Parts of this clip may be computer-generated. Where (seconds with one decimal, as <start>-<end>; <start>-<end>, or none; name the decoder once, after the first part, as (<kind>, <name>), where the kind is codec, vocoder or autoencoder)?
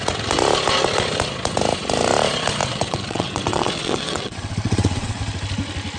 2.6-5.2 (vocoder, WaveNeXt)